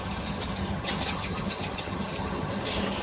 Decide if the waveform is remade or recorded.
remade